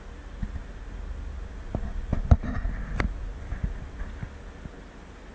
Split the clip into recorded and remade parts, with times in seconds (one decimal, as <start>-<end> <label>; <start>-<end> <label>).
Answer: 0.0-5.3 recorded

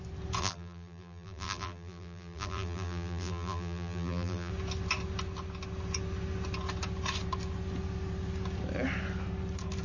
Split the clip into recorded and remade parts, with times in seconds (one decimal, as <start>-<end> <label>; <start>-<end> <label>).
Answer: 0.0-0.4 recorded; 0.4-4.5 remade; 4.5-9.8 recorded